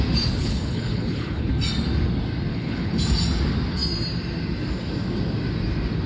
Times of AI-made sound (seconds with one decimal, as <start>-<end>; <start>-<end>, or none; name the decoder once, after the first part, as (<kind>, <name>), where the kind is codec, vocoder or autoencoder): 0.4-1.5 (codec, HILCodec); 2.5-3.0